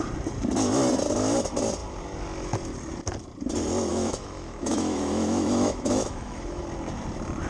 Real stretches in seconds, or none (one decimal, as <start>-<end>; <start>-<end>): 0.0-3.9; 6.6-7.5